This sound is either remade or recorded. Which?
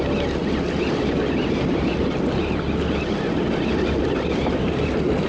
recorded